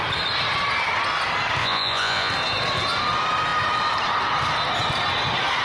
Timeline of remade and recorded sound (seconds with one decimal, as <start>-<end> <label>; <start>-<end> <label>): 0.0-1.6 recorded; 1.6-2.3 remade; 2.3-5.6 recorded